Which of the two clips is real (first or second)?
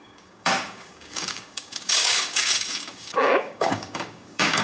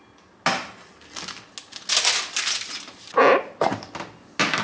second